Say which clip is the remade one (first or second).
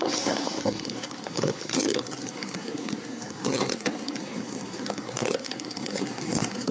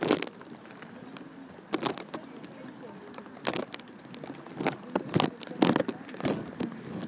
first